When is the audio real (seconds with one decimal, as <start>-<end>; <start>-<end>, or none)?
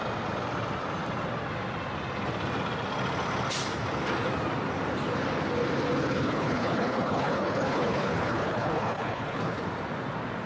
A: 0.0-6.0; 9.6-10.5